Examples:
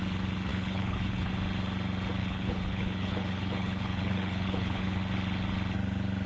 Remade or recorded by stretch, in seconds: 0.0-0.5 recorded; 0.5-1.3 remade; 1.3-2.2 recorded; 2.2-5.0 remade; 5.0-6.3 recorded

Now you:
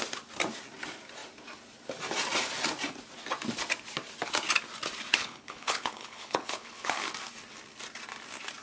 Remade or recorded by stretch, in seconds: 0.0-5.1 recorded; 5.1-7.1 remade; 7.1-8.6 recorded

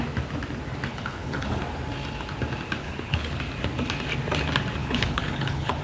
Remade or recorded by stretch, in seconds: 0.0-0.9 recorded; 0.9-1.6 remade; 1.6-2.8 recorded; 2.8-3.4 remade; 3.4-4.8 recorded; 4.8-5.8 remade